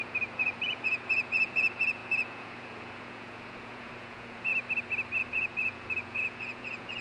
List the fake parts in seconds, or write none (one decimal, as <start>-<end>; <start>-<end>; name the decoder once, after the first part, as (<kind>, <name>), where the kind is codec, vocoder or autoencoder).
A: 0.0-4.5 (vocoder, Vocos); 5.2-7.0